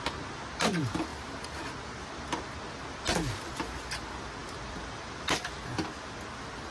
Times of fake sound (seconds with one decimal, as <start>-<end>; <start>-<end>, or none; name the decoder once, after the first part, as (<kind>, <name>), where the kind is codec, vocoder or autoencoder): 4.4-5.7 (vocoder, BigVGAN v2)